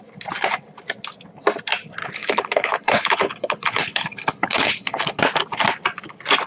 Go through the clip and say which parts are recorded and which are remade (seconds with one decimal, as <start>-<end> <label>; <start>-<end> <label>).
0.0-2.0 recorded; 2.0-5.2 remade; 5.2-6.5 recorded